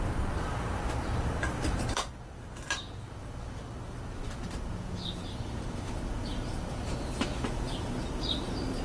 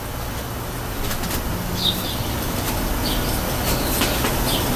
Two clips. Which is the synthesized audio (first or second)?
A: first